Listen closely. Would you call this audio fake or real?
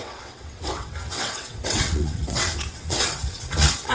fake